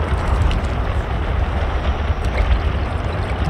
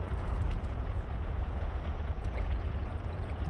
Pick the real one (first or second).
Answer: first